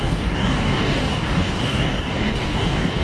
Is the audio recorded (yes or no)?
no